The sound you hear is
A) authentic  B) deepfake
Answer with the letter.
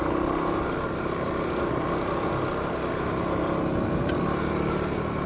A